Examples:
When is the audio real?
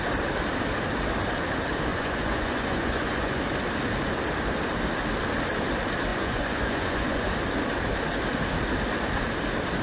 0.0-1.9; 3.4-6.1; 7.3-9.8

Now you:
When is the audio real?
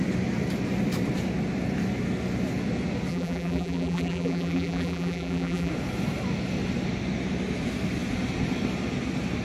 0.0-3.1; 5.7-9.4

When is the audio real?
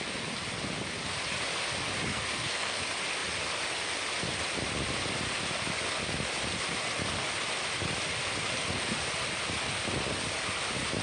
0.0-2.1; 2.8-11.0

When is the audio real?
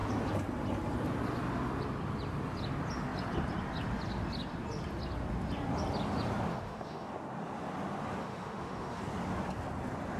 0.0-6.5; 7.1-8.2; 9.0-10.2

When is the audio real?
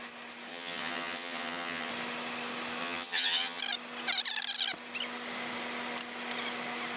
0.0-0.5; 1.9-2.8; 3.6-7.0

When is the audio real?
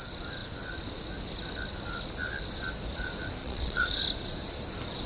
0.0-3.4; 4.0-5.1